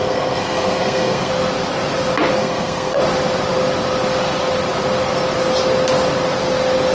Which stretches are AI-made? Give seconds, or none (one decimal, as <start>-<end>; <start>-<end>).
0.0-1.3; 2.4-3.0